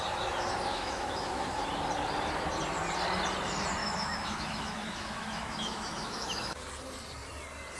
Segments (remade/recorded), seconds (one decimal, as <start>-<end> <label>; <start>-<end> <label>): 0.0-0.7 recorded; 0.7-1.6 remade; 1.6-3.8 recorded; 3.8-6.6 remade; 6.6-7.8 recorded